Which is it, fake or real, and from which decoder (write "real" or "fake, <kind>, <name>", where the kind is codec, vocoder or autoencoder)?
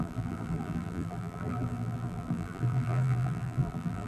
fake, vocoder, BigVGAN v2